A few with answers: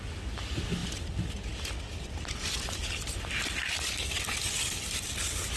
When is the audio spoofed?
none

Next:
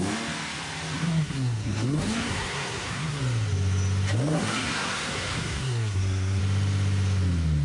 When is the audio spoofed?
1.0-3.2 (codec, SNAC); 4.3-6.4

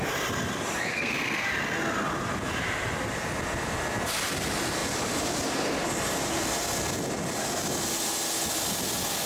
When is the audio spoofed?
0.9-1.5 (codec, SNAC)

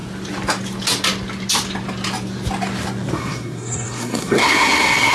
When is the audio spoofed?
3.1-5.1 (codec, SNAC)

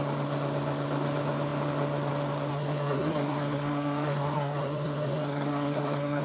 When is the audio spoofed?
2.5-6.2 (codec, SNAC)

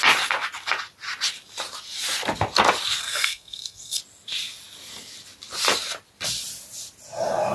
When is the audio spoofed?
3.0-4.0 (codec, SNAC)